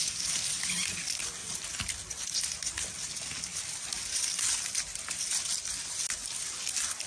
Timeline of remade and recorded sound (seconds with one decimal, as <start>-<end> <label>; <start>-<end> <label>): 0.0-7.1 recorded